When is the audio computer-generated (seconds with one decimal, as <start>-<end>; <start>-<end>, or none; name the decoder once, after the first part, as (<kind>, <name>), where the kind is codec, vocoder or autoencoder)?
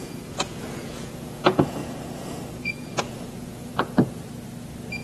0.0-3.7 (vocoder, Vocos)